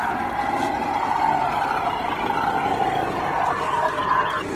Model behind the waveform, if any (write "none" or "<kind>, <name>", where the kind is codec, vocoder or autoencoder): none